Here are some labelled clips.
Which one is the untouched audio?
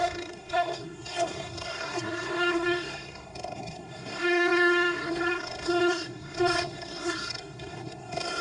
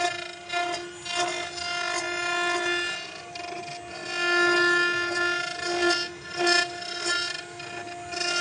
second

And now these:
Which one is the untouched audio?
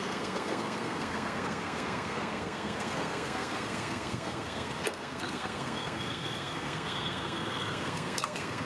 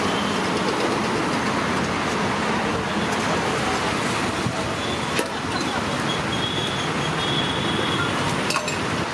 second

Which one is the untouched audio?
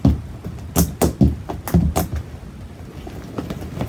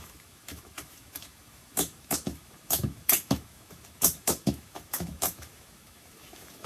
first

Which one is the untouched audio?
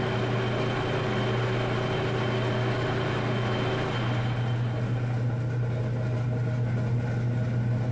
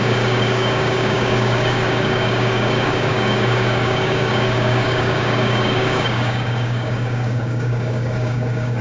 first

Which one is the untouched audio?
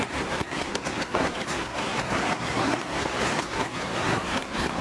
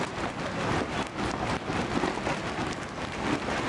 second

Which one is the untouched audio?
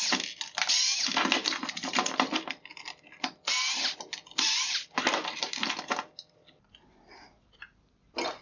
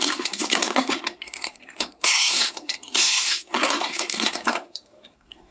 first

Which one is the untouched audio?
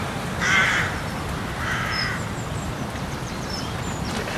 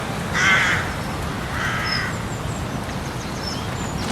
second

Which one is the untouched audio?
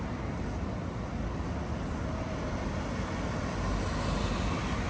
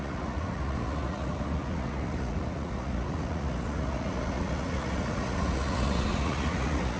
first